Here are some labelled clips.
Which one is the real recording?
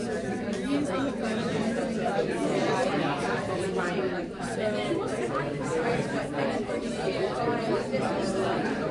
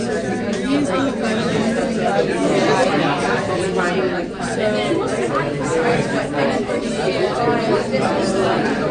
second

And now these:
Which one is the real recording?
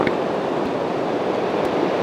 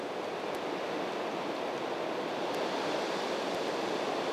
second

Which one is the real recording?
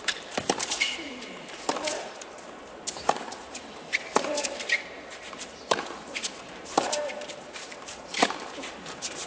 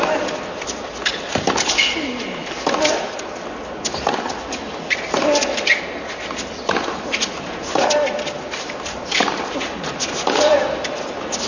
second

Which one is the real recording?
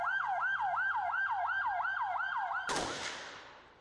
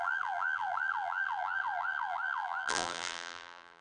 first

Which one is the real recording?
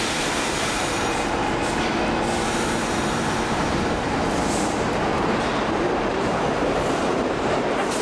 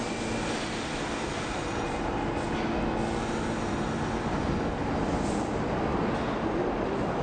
second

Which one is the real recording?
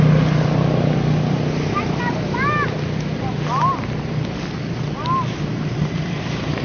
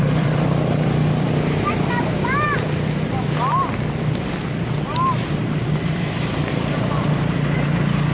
first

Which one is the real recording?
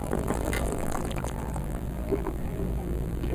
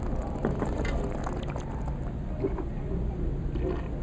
second